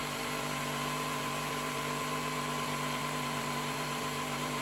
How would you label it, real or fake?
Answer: fake